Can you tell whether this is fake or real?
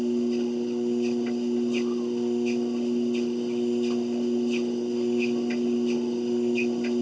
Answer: real